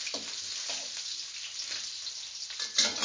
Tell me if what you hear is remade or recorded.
recorded